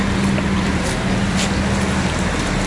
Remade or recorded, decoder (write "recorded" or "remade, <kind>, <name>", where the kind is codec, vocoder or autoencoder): recorded